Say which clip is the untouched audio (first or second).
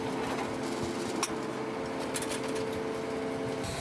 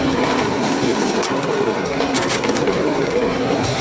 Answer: first